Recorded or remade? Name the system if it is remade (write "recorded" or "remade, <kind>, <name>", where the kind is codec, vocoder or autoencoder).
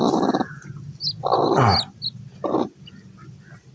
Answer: recorded